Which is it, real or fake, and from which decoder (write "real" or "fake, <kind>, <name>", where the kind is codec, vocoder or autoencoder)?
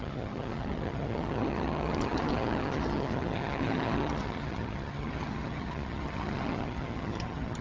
fake, vocoder, HiFi-GAN